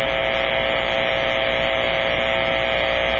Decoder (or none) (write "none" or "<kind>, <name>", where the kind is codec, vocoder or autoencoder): none